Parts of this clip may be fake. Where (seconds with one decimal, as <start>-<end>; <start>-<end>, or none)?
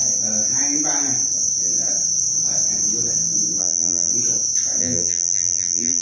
3.6-4.1; 4.8-6.0